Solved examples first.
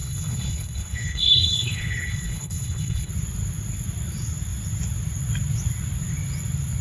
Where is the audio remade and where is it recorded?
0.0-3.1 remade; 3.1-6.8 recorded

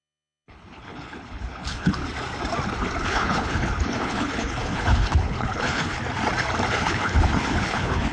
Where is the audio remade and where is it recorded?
0.0-2.0 remade; 2.0-3.0 recorded; 3.0-6.0 remade; 6.0-6.7 recorded; 6.7-8.1 remade

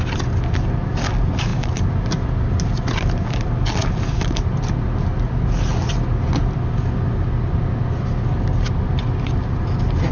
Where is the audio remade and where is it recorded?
0.0-10.1 recorded